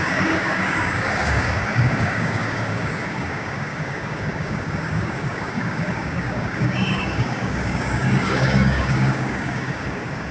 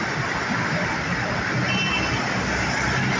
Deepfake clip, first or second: first